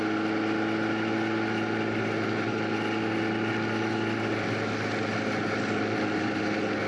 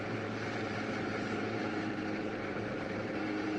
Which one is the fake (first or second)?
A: second